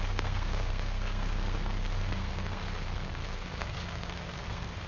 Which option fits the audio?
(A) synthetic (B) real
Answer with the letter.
A